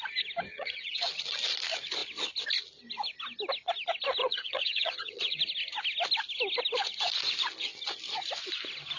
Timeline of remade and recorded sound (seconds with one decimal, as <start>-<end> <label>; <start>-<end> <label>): 0.0-0.5 recorded; 0.5-1.1 remade; 1.1-4.2 recorded; 4.2-5.4 remade; 5.4-9.0 recorded